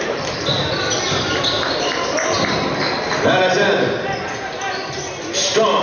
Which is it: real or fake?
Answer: real